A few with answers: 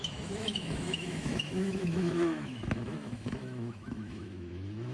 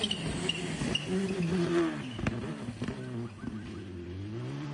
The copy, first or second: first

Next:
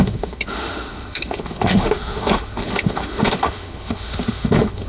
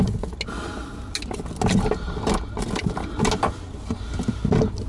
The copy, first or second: first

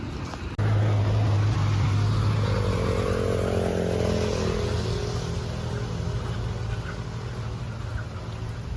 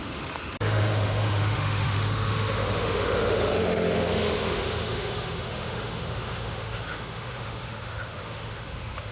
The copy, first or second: second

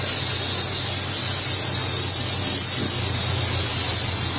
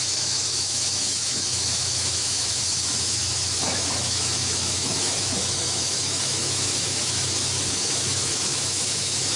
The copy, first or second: second